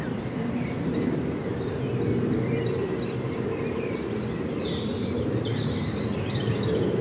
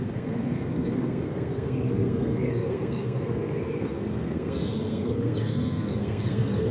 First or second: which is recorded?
first